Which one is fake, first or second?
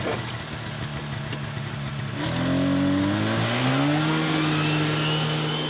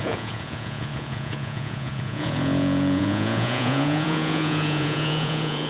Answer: second